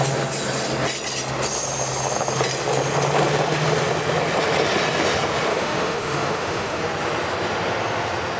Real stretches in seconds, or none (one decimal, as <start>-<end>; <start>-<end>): 0.0-5.5; 6.8-8.4